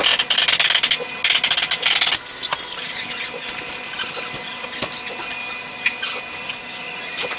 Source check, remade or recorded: recorded